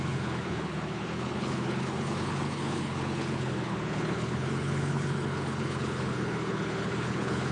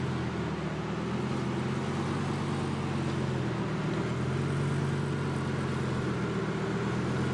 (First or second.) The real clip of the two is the second